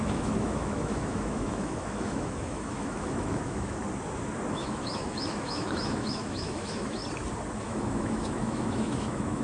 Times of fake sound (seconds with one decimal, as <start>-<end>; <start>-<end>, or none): 0.0-3.8; 4.5-7.0; 7.6-9.4